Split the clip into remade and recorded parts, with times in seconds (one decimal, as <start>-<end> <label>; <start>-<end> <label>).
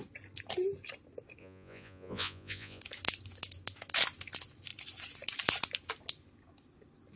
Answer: 0.0-1.4 recorded; 1.4-2.8 remade; 2.8-7.2 recorded